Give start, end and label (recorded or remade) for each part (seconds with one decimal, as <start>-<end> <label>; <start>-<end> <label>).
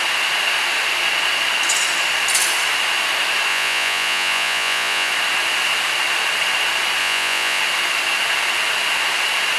0.0-3.5 recorded; 3.5-5.1 remade; 5.1-7.0 recorded; 7.0-7.6 remade; 7.6-9.6 recorded